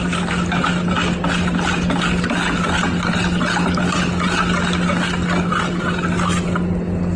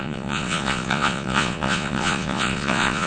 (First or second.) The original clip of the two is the first